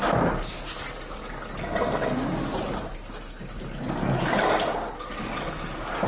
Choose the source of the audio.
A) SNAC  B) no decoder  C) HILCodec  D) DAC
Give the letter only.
B